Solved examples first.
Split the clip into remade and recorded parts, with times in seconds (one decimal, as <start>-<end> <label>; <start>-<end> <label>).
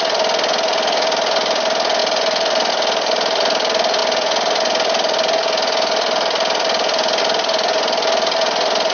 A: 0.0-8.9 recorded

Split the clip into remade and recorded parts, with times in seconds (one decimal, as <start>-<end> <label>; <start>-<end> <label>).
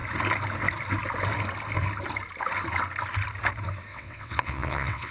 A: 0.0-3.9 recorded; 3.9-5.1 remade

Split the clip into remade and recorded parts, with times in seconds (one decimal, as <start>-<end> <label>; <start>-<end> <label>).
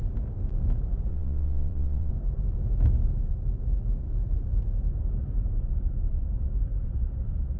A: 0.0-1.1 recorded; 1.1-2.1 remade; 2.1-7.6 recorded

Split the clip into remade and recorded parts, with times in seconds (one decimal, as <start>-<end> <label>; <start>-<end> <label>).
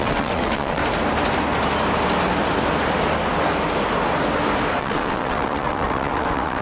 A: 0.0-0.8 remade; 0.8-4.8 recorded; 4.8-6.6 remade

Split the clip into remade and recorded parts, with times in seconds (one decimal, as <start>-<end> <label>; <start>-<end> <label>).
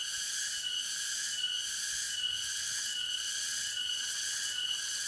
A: 0.0-2.3 recorded; 2.3-5.1 remade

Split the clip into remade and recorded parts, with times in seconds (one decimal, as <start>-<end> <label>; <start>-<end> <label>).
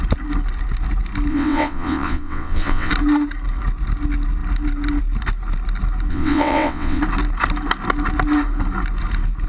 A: 0.0-1.3 recorded; 1.3-2.9 remade; 2.9-6.1 recorded; 6.1-7.0 remade; 7.0-9.5 recorded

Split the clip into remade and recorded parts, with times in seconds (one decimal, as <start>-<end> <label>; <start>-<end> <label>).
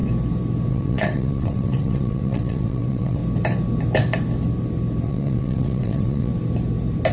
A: 0.0-0.7 recorded; 0.7-3.2 remade; 3.2-5.0 recorded; 5.0-6.3 remade; 6.3-7.1 recorded